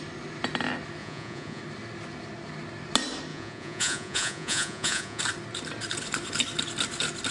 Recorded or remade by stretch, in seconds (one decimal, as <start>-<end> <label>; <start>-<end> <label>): 0.0-1.0 recorded; 1.0-1.6 remade; 1.6-3.3 recorded; 3.3-5.2 remade; 5.2-7.3 recorded